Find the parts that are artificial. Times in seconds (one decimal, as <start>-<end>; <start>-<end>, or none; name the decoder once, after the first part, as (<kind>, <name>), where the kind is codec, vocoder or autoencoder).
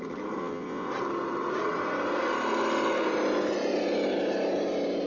0.4-0.9 (vocoder, WaveNeXt)